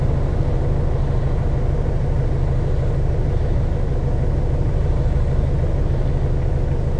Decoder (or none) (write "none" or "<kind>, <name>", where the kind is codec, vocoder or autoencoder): none